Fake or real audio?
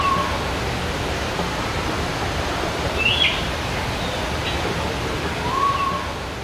real